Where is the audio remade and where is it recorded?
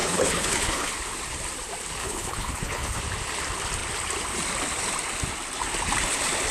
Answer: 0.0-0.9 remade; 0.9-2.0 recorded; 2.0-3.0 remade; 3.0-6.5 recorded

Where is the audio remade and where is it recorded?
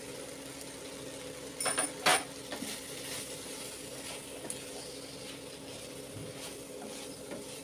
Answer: 0.0-7.6 recorded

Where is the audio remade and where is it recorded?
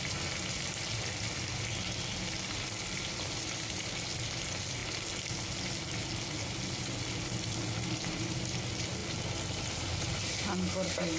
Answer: 0.0-11.2 recorded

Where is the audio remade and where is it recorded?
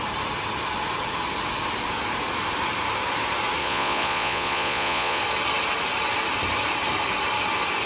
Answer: 0.0-3.6 recorded; 3.6-5.2 remade; 5.2-7.9 recorded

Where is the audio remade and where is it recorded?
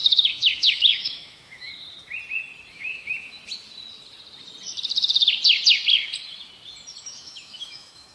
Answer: 0.0-1.7 remade; 1.7-2.7 recorded; 2.7-3.4 remade; 3.4-7.0 recorded; 7.0-8.1 remade